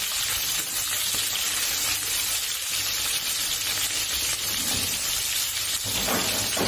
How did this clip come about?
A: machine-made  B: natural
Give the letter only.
B